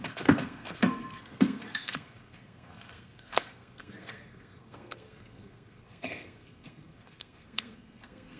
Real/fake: fake